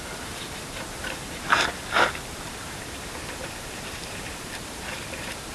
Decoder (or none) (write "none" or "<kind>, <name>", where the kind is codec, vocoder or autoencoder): vocoder, BigVGAN v2